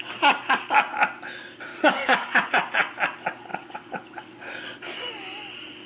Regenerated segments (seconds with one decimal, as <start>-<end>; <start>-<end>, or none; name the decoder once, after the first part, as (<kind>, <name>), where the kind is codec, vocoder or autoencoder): 1.7-2.5 (codec, DAC)